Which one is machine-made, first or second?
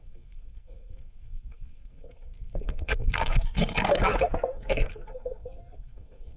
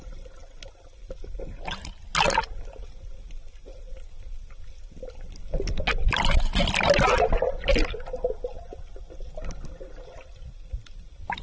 first